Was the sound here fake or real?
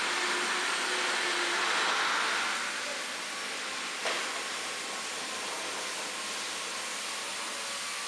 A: real